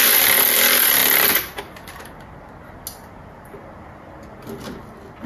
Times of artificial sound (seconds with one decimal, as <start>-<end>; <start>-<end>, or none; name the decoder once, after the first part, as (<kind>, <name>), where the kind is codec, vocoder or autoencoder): none